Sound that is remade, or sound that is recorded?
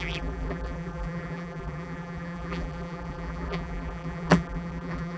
remade